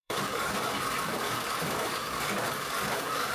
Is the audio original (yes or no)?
no